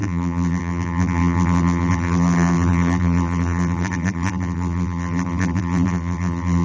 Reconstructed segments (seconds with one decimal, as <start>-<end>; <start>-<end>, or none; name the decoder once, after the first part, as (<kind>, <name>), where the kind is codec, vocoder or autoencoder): 0.0-6.6 (vocoder, BigVGAN v2)